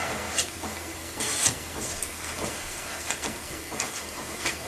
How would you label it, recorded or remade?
remade